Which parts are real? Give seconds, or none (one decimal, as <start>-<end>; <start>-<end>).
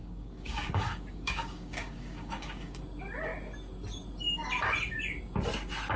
2.8-6.0